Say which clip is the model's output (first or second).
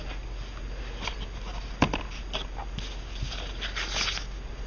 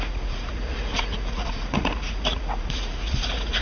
second